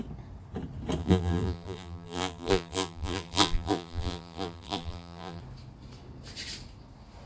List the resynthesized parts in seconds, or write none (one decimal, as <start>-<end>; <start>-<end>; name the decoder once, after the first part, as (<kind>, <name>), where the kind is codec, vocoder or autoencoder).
1.0-5.4 (vocoder, BigVGAN v2)